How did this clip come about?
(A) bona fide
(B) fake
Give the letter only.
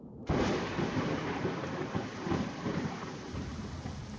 A